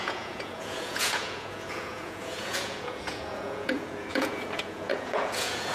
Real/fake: fake